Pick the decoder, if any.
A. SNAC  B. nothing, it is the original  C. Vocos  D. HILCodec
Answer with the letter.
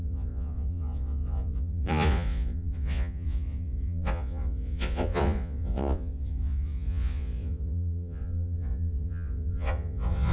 C